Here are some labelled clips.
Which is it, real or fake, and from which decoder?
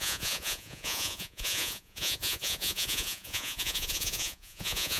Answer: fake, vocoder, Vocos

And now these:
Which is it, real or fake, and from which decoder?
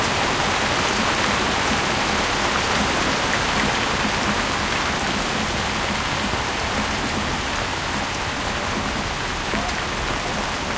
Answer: fake, vocoder, BigVGAN v2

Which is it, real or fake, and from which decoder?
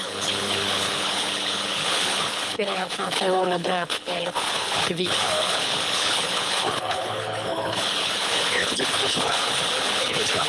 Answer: fake, codec, HILCodec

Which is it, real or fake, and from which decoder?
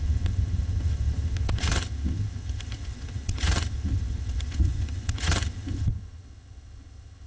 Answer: fake, vocoder, HiFi-GAN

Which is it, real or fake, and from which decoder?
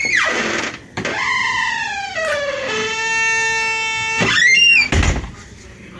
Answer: real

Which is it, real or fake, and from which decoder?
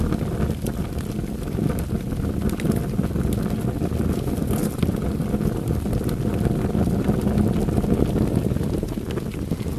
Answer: real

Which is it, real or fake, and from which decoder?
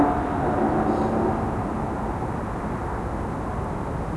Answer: real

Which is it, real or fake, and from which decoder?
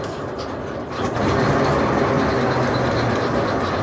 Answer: real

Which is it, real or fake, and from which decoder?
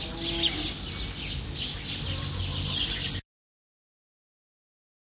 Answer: real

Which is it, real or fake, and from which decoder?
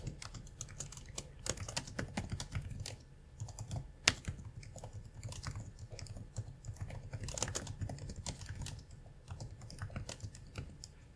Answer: real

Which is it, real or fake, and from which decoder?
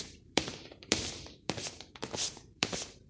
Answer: fake, vocoder, BigVGAN v2